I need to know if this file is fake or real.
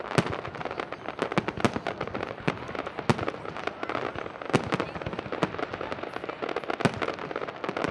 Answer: real